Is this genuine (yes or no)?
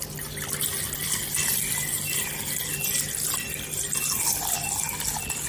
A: yes